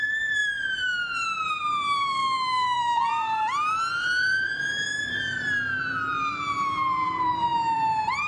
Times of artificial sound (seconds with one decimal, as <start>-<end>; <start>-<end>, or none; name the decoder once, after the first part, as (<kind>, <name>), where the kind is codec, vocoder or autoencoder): 0.0-8.3 (vocoder, BigVGAN v2)